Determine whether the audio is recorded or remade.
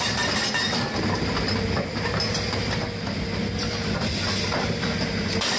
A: recorded